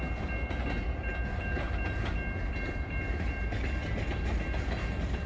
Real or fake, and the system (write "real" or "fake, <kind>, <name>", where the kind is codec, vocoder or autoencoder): real